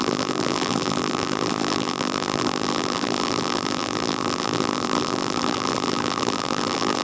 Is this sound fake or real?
fake